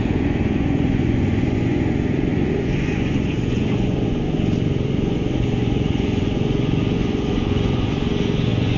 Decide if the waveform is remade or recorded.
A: remade